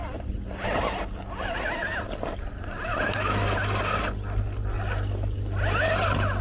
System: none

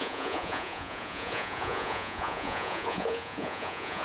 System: vocoder, Vocos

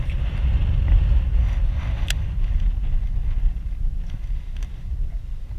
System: none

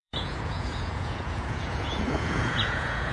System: vocoder, Vocos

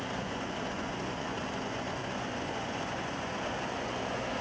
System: vocoder, Vocos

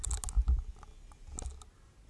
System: none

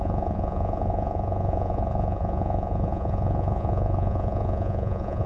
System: vocoder, Vocos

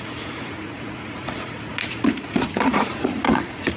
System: vocoder, Vocos